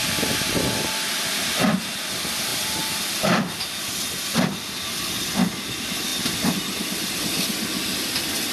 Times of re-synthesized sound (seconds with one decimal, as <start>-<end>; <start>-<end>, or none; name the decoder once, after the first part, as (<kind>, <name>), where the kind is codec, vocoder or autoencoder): none